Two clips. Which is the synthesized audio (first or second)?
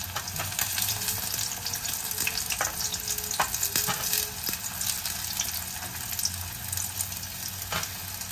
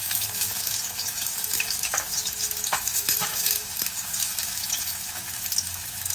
second